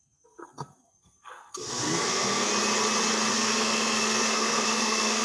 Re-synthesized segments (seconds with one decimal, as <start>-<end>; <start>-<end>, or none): 0.0-2.5; 3.3-5.2